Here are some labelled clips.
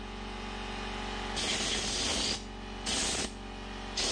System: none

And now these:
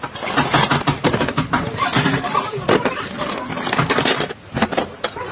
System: none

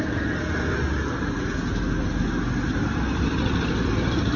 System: none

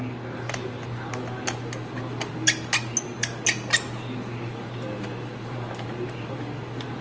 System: none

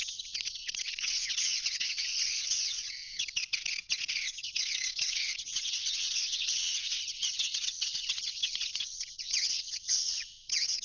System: vocoder, WaveNeXt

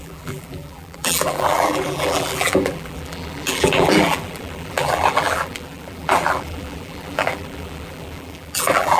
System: vocoder, BigVGAN v2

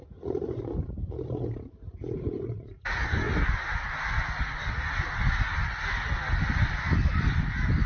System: none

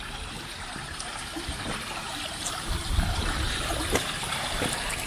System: vocoder, BigVGAN v2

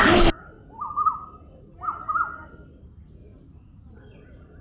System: none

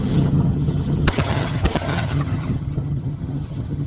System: vocoder, HiFi-GAN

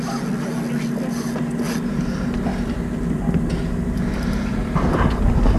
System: none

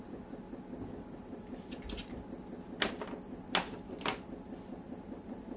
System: none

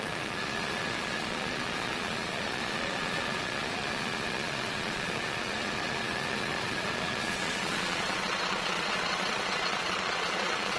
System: vocoder, Vocos